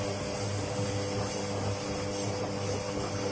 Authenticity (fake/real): real